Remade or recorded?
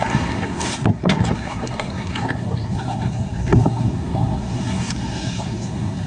remade